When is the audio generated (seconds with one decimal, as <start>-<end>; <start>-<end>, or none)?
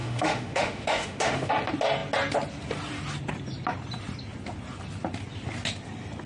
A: 0.0-1.5